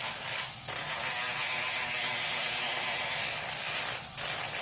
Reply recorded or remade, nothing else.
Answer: recorded